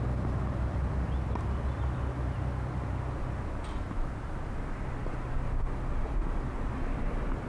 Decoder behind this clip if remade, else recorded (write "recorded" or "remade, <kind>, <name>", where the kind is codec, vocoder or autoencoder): recorded